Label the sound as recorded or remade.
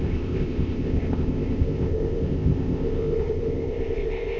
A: remade